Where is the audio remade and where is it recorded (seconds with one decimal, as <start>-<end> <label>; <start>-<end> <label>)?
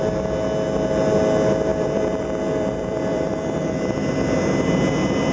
0.0-1.7 recorded; 1.7-3.7 remade; 3.7-5.3 recorded